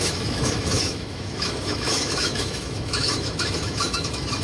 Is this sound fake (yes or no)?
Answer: yes